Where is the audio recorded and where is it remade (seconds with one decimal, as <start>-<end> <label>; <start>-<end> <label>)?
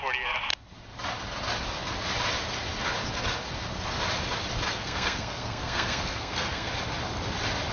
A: 0.0-4.7 recorded; 4.7-6.7 remade; 6.7-7.7 recorded